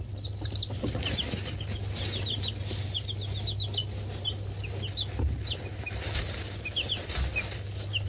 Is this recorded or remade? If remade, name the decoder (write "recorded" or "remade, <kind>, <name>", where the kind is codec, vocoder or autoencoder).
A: recorded